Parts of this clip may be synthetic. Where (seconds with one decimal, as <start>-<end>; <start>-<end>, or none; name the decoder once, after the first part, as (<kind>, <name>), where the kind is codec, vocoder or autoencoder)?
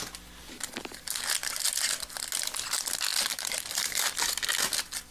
3.1-4.1 (vocoder, BigVGAN v2)